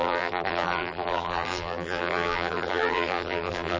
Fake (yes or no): yes